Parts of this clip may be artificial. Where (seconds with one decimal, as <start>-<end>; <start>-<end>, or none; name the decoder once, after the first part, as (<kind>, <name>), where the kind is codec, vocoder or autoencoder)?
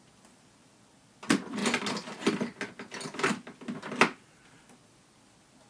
none